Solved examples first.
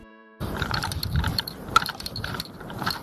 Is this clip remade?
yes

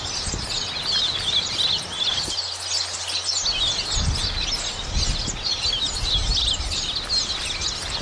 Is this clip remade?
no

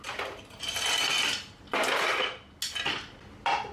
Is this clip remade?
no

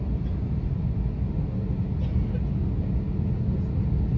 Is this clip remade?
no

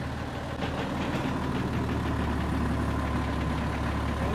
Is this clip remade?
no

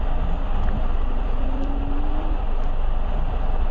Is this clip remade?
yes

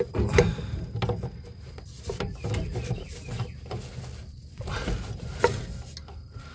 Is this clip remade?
no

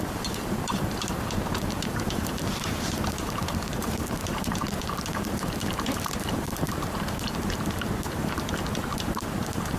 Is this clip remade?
yes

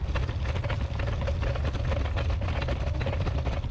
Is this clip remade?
no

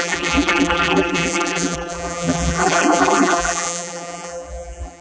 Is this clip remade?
yes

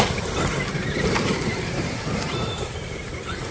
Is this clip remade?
yes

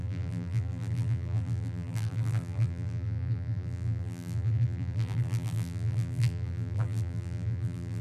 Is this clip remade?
yes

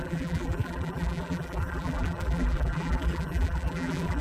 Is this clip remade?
yes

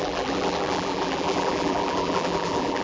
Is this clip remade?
yes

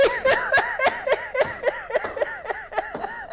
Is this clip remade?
no